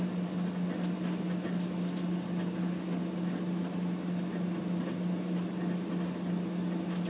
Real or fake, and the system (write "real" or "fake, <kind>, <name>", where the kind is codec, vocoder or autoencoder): real